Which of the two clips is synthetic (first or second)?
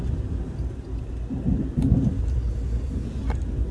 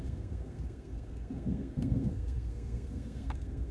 second